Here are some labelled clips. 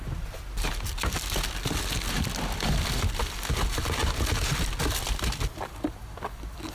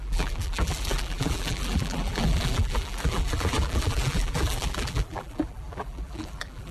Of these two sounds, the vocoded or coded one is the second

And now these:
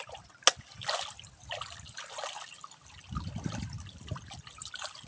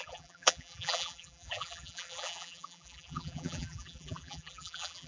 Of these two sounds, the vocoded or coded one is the second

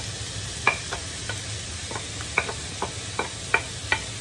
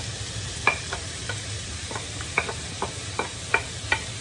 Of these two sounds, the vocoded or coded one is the second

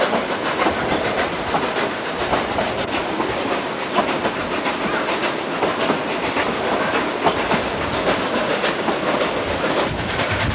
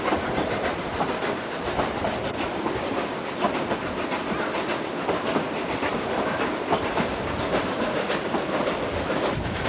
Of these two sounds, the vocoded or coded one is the second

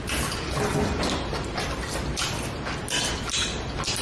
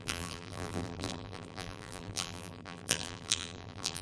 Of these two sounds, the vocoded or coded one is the second